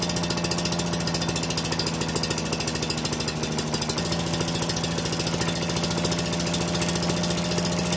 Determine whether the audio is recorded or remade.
recorded